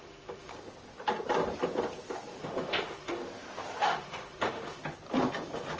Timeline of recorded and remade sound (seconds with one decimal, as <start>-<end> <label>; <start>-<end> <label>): 0.0-0.5 remade; 0.5-2.4 recorded; 2.4-3.2 remade; 3.2-3.8 recorded; 3.8-4.8 remade; 4.8-5.8 recorded